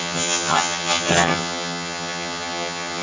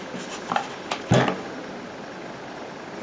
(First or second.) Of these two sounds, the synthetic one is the first